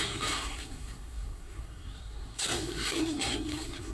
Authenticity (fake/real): fake